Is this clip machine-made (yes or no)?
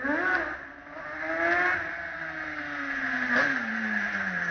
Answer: no